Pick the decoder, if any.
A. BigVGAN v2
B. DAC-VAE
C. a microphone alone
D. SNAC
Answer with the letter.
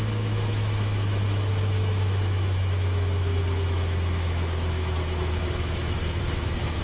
B